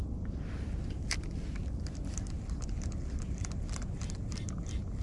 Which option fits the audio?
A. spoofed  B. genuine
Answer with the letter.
B